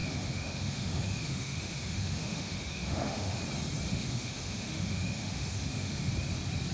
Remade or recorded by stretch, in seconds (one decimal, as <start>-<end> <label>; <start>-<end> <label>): 0.0-3.4 remade; 3.4-3.9 recorded; 3.9-6.1 remade; 6.1-6.7 recorded